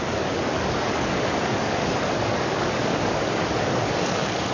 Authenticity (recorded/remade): remade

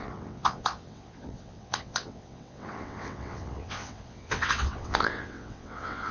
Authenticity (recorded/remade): remade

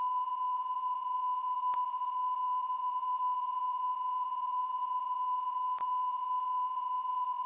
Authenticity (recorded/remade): remade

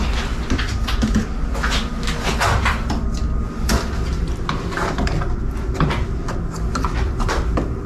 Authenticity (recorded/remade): recorded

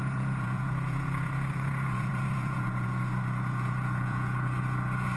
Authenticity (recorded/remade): remade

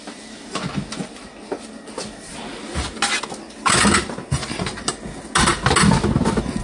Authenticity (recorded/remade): recorded